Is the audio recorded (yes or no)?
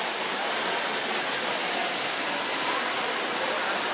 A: yes